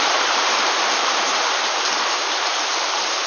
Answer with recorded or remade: remade